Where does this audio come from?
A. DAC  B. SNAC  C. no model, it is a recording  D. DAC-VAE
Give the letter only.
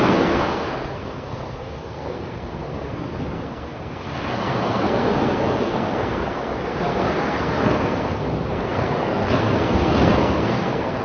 B